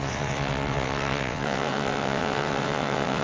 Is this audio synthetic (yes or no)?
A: yes